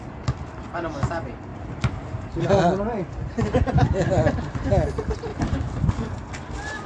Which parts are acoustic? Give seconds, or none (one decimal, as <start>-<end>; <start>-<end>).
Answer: 0.0-1.5; 2.6-3.5; 4.7-5.3; 5.9-6.9